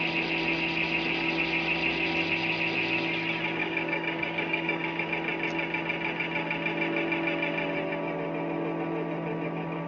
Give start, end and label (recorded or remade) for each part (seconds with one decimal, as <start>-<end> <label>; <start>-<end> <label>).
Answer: 0.0-3.6 recorded; 3.6-5.0 remade; 5.0-9.9 recorded